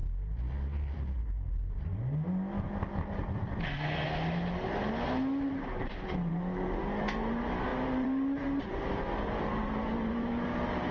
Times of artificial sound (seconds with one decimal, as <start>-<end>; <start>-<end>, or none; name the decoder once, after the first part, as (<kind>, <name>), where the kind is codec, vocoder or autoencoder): 0.9-1.9 (vocoder, BigVGAN v2); 5.5-10.9